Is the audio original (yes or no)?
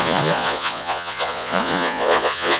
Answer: no